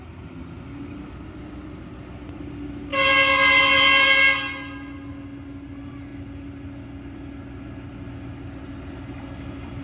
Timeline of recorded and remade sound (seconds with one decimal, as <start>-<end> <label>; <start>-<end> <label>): 0.0-9.8 recorded